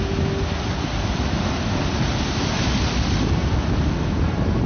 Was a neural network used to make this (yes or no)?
no